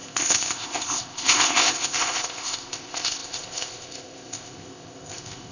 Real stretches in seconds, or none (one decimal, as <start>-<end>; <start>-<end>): none